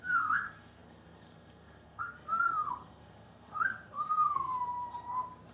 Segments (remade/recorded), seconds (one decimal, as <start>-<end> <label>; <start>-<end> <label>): 0.0-4.5 remade; 4.5-5.5 recorded